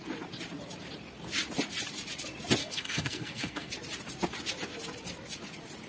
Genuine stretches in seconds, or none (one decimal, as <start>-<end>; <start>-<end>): 0.0-2.6; 3.7-5.9